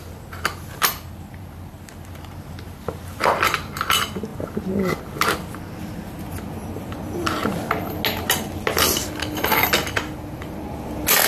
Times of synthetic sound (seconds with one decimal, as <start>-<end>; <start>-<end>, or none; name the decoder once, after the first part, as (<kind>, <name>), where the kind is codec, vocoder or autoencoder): none